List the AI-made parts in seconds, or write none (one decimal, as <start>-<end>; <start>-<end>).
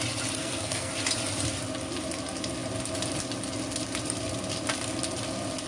0.4-0.9